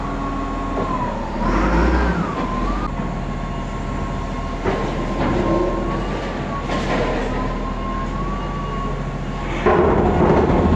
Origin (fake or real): real